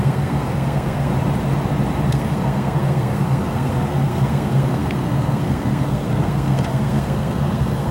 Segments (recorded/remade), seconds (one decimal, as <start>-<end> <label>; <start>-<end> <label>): 0.0-1.1 remade; 1.1-2.1 recorded; 2.1-7.9 remade